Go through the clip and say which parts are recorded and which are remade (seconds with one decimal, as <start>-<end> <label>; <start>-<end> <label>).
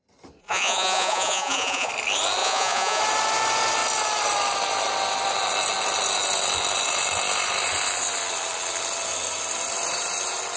0.0-0.4 recorded; 0.4-1.9 remade; 1.9-2.4 recorded; 2.4-3.0 remade; 3.0-10.6 recorded